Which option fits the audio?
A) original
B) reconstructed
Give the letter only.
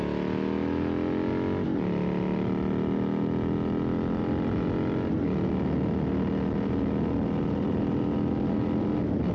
A